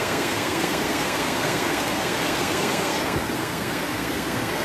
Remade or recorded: remade